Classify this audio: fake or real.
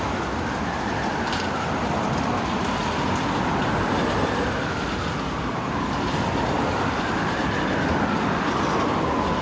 real